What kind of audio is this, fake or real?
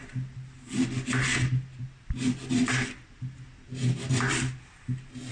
real